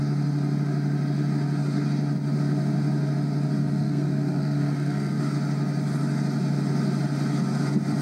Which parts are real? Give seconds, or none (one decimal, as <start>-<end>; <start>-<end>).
0.0-3.6; 5.2-8.0